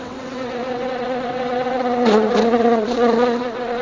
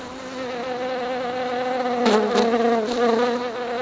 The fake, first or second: first